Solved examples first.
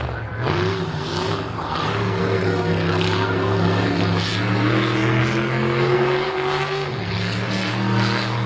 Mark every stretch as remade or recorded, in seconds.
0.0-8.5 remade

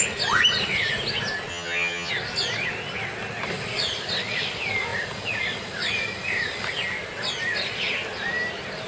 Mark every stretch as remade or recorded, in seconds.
0.0-1.5 recorded; 1.5-2.1 remade; 2.1-8.9 recorded

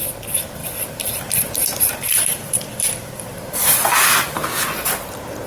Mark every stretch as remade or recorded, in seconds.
0.0-0.6 recorded; 0.6-3.9 remade; 3.9-5.5 recorded

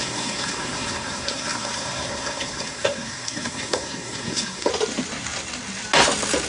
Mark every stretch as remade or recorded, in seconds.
0.0-4.7 remade; 4.7-6.5 recorded